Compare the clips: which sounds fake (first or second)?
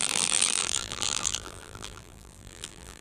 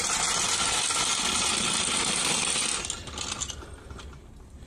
first